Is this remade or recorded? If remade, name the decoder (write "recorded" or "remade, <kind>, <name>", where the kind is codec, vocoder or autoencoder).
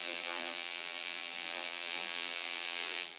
remade, vocoder, BigVGAN v2